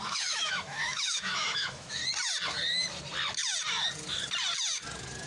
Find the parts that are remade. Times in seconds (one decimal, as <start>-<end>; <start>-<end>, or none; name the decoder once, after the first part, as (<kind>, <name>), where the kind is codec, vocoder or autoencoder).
0.0-2.0 (autoencoder, DAC-VAE)